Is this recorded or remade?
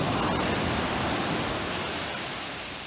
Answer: recorded